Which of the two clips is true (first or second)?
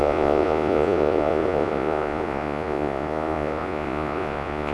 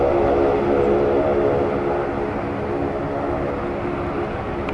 second